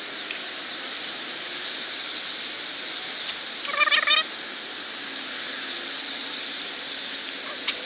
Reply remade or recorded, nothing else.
recorded